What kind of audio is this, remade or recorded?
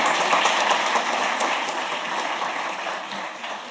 recorded